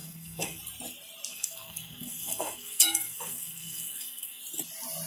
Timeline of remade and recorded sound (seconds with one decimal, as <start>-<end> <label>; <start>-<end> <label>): 0.0-0.6 remade; 0.6-1.3 recorded; 1.3-4.4 remade; 4.4-5.1 recorded